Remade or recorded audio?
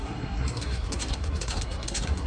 remade